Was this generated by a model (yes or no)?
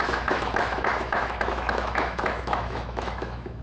yes